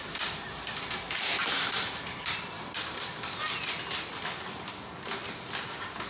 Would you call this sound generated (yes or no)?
no